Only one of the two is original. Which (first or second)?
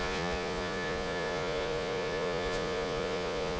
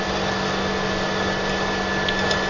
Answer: second